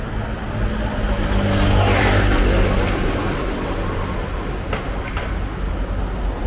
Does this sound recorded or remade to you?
recorded